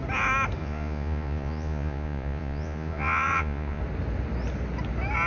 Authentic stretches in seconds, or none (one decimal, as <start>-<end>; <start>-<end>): 0.0-0.6; 3.8-5.3